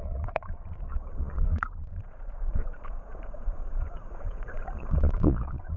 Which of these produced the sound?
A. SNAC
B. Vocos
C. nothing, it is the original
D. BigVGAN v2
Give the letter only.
B